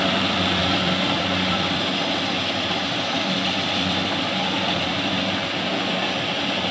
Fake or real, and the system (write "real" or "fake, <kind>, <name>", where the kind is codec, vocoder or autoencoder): fake, vocoder, BigVGAN v2